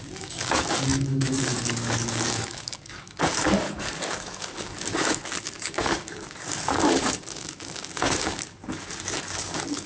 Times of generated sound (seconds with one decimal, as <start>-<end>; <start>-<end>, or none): 0.0-9.9